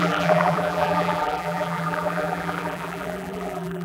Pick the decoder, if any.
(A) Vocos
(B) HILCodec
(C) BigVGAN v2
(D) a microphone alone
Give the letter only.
C